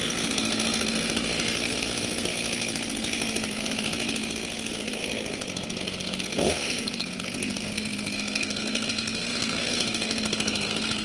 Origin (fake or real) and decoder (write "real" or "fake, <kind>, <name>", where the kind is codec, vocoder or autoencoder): fake, codec, SNAC